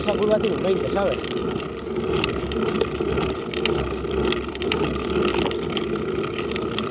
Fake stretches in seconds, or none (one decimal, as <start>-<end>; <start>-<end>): none